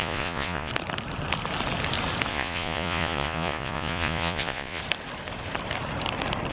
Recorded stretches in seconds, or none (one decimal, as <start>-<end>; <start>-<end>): 0.7-2.3; 4.8-6.5